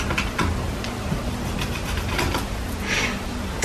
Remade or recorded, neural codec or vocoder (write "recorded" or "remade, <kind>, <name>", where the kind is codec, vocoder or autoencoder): recorded